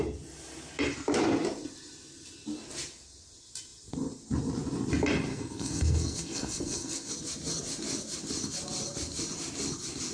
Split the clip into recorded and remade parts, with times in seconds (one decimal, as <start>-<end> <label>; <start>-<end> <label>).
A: 0.0-5.3 recorded; 5.3-7.1 remade; 7.1-10.1 recorded